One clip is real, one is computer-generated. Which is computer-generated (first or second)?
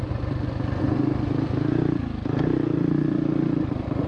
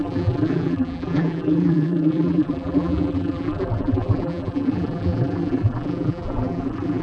second